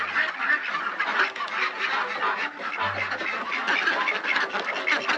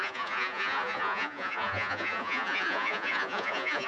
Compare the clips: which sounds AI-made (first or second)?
second